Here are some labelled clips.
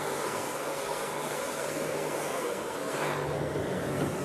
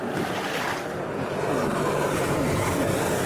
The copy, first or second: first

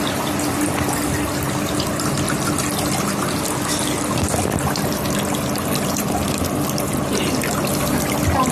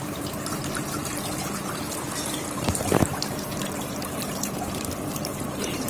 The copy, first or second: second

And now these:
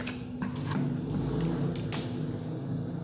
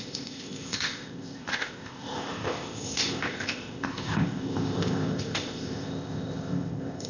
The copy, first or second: second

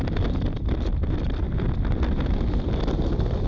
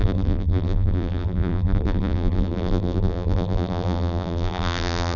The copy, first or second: second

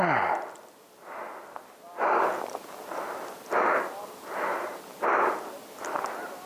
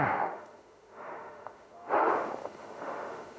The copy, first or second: second